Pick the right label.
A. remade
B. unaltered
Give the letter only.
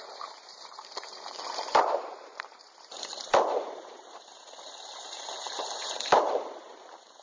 A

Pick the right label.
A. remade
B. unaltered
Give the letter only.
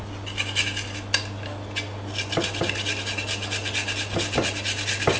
B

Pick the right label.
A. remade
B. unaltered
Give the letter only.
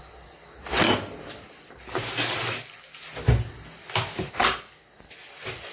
B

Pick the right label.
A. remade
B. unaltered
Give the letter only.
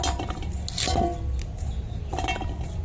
B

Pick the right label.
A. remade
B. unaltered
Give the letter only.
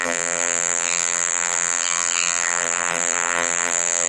A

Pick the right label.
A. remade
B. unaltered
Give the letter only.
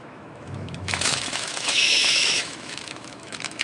A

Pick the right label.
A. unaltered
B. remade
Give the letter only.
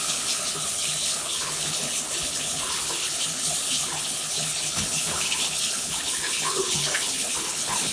B